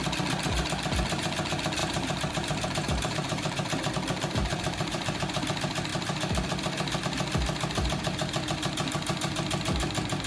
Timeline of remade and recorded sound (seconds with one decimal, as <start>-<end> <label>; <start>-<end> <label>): 0.0-1.8 recorded; 1.8-3.9 remade; 3.9-4.4 recorded; 4.4-5.4 remade; 5.4-10.3 recorded